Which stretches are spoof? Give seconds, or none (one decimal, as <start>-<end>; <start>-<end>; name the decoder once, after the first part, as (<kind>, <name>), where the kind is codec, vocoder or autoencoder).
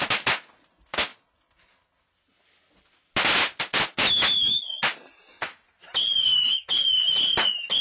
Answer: none